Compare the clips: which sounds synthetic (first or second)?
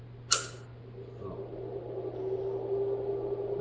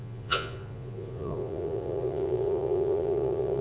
second